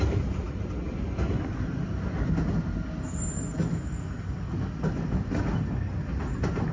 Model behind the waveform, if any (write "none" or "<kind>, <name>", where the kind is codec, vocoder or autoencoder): none